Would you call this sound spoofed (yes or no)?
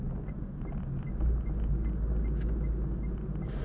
no